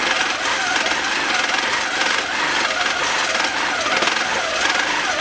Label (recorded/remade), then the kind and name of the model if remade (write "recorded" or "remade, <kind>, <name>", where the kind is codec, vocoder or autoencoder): recorded